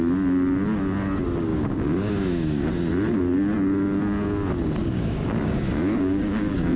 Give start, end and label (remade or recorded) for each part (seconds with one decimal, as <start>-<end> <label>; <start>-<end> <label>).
0.0-1.5 recorded; 1.5-2.7 remade; 2.7-4.8 recorded; 4.8-6.8 remade